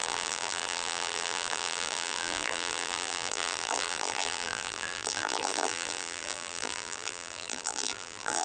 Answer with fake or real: fake